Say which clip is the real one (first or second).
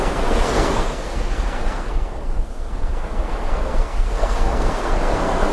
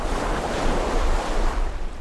second